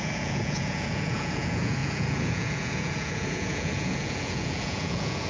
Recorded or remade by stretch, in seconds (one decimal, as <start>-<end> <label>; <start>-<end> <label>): 0.0-5.3 remade